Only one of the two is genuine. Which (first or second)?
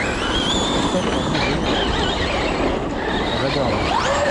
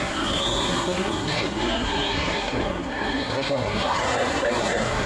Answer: first